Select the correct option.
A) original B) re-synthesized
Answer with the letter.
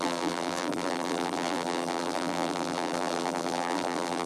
B